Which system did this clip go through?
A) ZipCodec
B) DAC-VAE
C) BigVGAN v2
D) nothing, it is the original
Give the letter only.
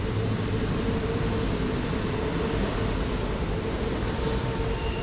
D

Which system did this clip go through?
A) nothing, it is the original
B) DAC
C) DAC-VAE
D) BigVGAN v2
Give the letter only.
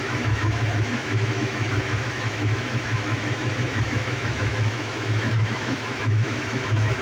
C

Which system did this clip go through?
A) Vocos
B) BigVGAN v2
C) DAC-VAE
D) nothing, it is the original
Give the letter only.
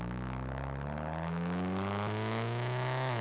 C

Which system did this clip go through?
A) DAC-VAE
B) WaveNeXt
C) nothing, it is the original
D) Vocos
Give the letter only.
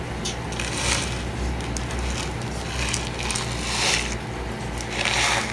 C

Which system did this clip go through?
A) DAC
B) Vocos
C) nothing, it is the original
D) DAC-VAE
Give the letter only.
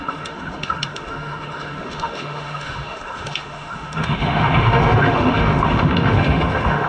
D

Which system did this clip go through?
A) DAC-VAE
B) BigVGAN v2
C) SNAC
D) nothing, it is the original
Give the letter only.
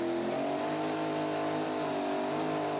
D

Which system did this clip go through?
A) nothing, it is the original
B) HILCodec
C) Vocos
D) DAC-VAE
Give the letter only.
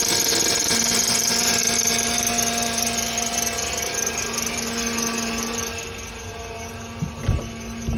A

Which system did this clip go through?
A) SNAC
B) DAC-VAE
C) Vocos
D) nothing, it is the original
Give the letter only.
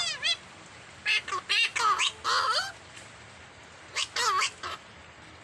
D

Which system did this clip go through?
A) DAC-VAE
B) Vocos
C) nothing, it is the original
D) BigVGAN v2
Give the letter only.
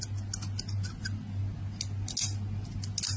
C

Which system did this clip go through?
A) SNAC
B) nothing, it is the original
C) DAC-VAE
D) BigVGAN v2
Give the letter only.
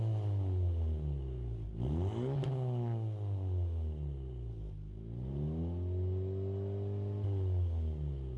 B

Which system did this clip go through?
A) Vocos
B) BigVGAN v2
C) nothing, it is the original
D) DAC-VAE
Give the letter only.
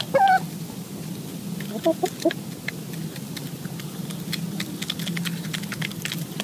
C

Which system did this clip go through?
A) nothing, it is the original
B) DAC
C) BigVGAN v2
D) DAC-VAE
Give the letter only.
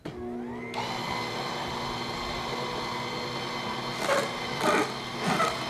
A